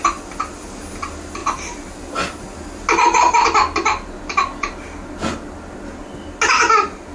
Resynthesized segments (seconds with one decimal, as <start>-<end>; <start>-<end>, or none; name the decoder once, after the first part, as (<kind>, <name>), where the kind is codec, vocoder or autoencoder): none